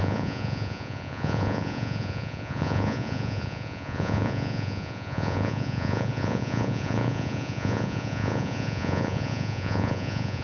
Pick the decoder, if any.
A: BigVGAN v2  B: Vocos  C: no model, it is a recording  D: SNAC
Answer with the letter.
B